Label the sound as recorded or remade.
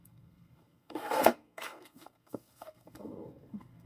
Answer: remade